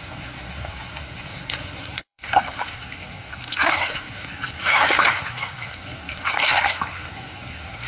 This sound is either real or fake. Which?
fake